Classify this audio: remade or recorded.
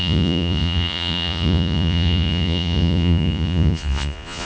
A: remade